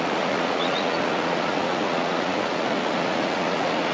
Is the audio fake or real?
fake